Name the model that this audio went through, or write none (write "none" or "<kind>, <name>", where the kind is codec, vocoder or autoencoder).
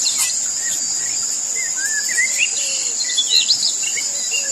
none